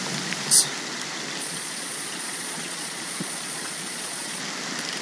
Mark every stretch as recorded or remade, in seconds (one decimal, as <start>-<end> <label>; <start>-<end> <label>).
0.0-1.4 recorded; 1.4-4.4 remade; 4.4-5.0 recorded